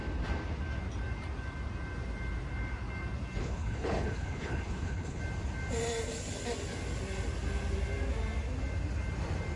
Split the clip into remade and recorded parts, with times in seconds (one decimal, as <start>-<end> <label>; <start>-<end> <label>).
0.0-3.4 recorded; 3.4-5.2 remade; 5.2-9.6 recorded

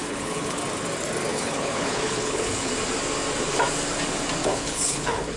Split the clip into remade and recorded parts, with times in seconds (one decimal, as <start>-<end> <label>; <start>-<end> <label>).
0.0-0.6 remade; 0.6-1.3 recorded; 1.3-2.7 remade; 2.7-4.4 recorded; 4.4-5.4 remade